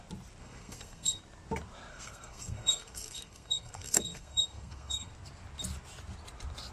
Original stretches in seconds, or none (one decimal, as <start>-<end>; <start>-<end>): 0.0-0.4; 1.2-1.9; 5.1-6.7